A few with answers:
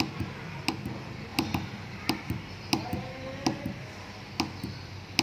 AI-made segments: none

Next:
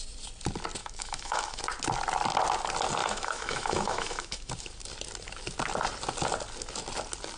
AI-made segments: 0.8-1.6; 3.0-4.5

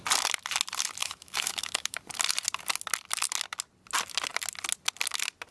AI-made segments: 1.0-2.0

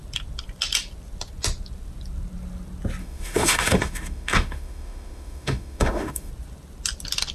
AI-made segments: 3.0-6.3

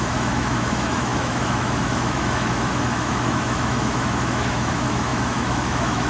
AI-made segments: 0.0-6.1

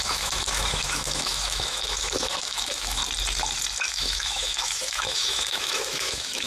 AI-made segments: 0.0-3.0; 3.9-6.5